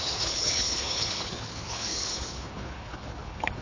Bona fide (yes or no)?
no